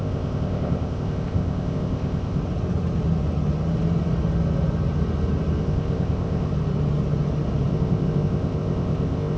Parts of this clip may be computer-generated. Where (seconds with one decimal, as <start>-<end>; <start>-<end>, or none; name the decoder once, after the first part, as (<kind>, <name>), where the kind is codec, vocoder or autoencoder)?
0.0-2.4 (codec, ZipCodec); 5.6-6.5; 7.7-9.4